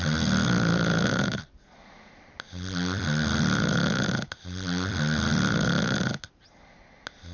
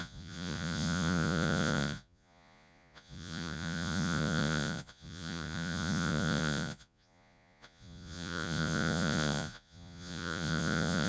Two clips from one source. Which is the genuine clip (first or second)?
first